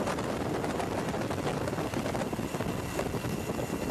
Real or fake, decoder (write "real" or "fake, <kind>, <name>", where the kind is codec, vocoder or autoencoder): real